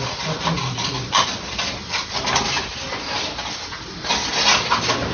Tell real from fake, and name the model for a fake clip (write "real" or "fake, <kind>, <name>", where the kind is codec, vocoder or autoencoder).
real